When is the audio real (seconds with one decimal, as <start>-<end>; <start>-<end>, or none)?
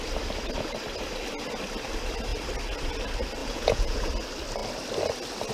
0.0-3.4; 4.1-5.5